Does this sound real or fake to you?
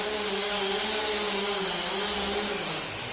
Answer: real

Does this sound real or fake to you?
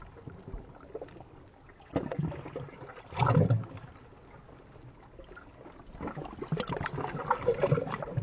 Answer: real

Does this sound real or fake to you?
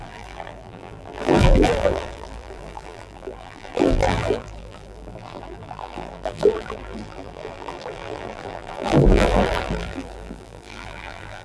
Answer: fake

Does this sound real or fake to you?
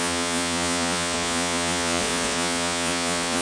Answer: fake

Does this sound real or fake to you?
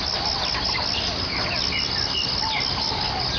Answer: real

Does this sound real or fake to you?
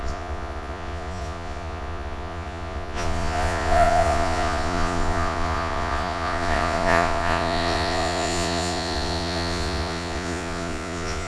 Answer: fake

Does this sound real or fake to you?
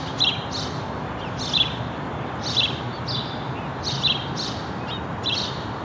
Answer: real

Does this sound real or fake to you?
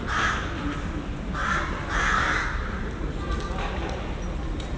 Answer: real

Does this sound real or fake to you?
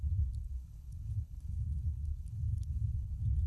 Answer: fake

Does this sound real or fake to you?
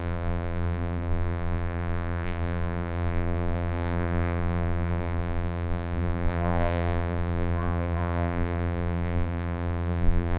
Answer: fake